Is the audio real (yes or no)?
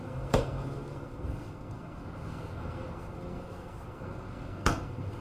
no